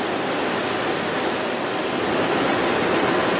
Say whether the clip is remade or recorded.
recorded